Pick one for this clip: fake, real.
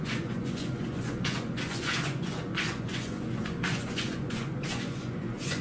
fake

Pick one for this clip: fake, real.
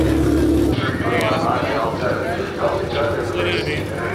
real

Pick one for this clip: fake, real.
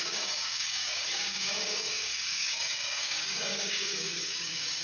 fake